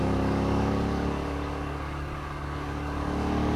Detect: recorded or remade remade